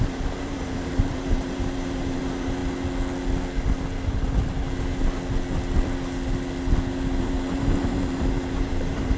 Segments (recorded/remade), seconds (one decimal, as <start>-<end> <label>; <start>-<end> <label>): 0.0-2.6 remade; 2.6-7.2 recorded; 7.2-9.2 remade